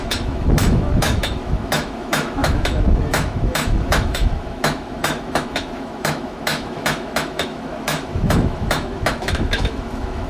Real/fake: fake